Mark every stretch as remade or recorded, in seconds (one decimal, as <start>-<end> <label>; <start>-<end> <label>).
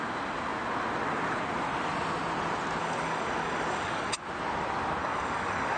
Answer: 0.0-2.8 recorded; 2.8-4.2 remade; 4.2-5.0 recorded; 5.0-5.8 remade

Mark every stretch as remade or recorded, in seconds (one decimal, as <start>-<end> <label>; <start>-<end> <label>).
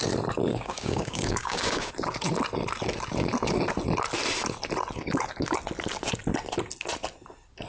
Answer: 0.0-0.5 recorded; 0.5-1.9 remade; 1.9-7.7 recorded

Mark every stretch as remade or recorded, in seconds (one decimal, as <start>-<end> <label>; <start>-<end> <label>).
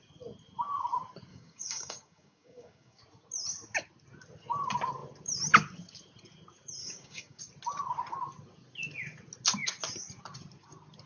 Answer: 0.0-1.3 recorded; 1.3-3.0 remade; 3.0-6.8 recorded; 6.8-7.4 remade; 7.4-11.1 recorded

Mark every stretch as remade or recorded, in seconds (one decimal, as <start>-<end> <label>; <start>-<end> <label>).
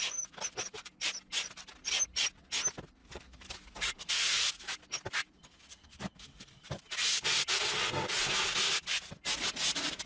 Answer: 0.0-3.0 recorded; 3.0-4.1 remade; 4.1-5.7 recorded; 5.7-6.8 remade; 6.8-10.1 recorded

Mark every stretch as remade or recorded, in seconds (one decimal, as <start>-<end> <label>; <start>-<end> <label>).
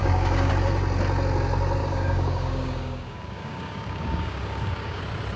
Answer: 0.0-0.5 remade; 0.5-1.8 recorded; 1.8-5.0 remade; 5.0-5.4 recorded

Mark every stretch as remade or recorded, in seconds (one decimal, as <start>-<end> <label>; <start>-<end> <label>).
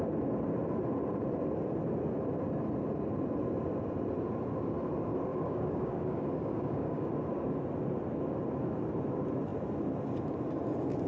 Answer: 0.0-5.3 recorded; 5.3-7.1 remade; 7.1-11.1 recorded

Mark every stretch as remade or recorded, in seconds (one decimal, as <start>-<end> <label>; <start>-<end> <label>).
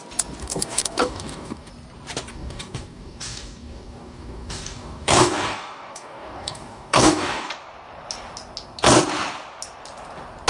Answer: 0.0-0.4 recorded; 0.4-1.7 remade; 1.7-2.3 recorded; 2.3-7.5 remade; 7.5-10.5 recorded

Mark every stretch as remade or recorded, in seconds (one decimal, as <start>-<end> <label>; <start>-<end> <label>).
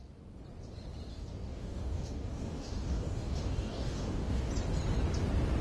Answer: 0.0-1.1 recorded; 1.1-4.5 remade; 4.5-5.6 recorded